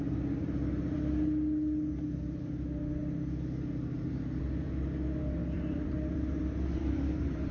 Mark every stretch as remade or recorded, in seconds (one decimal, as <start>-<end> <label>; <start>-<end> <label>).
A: 0.0-5.4 recorded; 5.4-7.5 remade